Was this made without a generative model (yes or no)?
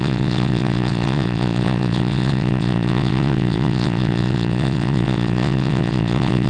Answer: no